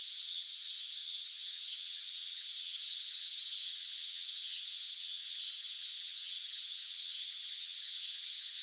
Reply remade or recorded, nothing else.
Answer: remade